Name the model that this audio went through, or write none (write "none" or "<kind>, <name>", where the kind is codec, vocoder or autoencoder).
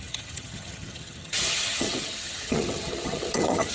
vocoder, HiFi-GAN